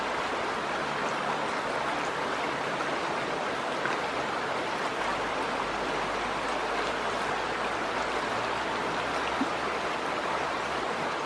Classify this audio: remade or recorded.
recorded